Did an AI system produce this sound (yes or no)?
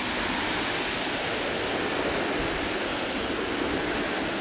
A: no